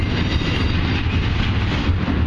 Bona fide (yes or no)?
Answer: yes